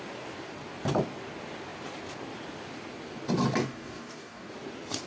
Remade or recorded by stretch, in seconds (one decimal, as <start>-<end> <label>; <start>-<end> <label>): 0.0-3.6 recorded; 3.6-4.5 remade; 4.5-5.1 recorded